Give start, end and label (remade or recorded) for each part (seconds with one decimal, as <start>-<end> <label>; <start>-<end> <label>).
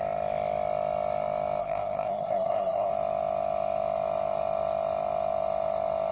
0.0-1.6 recorded; 1.6-2.9 remade; 2.9-6.1 recorded